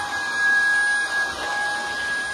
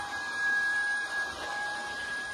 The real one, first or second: first